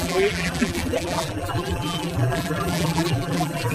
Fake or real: fake